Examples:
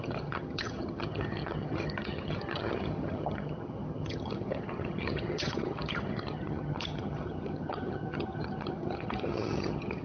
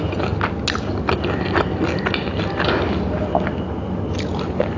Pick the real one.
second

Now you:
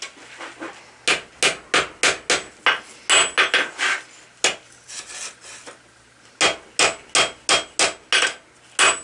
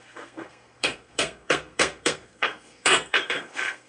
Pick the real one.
first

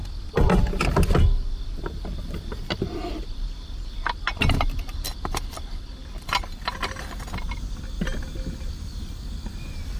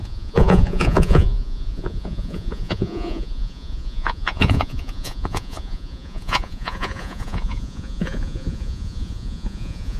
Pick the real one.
first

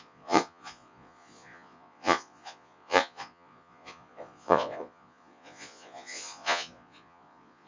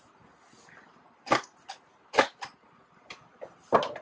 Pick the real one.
second